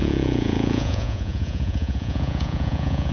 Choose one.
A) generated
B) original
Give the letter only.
A